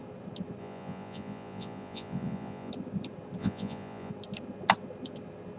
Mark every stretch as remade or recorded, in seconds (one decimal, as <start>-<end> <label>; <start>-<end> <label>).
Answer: 0.0-0.6 recorded; 0.6-2.7 remade; 2.7-3.4 recorded; 3.4-4.1 remade; 4.1-5.6 recorded